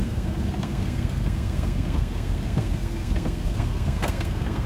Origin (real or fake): fake